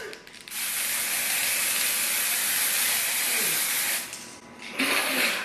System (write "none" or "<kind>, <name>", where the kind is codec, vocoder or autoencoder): none